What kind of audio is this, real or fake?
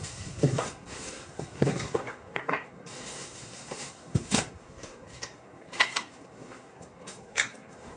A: fake